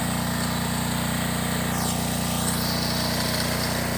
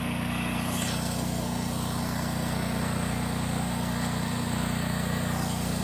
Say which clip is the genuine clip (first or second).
first